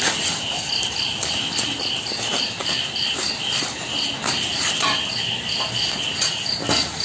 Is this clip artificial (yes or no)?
no